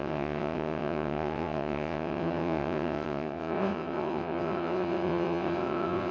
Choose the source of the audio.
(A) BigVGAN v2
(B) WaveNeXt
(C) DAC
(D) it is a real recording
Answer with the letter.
B